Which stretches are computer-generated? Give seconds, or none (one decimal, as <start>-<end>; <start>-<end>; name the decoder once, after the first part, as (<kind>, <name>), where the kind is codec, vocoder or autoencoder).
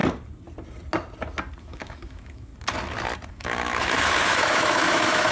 1.6-2.5 (autoencoder, DAC-VAE); 3.3-5.3